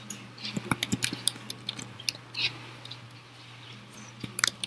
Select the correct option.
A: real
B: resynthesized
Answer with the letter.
A